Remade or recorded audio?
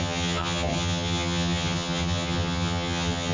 remade